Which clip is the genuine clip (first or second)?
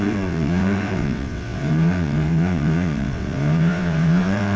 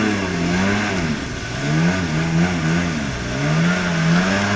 second